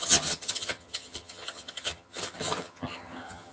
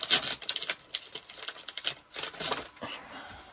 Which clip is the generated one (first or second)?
first